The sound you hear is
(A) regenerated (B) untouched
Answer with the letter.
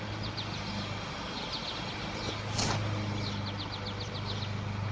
B